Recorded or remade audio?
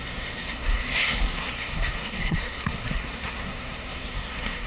remade